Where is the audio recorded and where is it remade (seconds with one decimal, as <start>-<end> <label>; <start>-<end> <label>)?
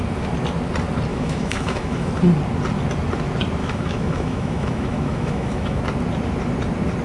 0.0-1.1 recorded; 1.1-2.1 remade; 2.1-3.6 recorded; 3.6-5.8 remade; 5.8-7.0 recorded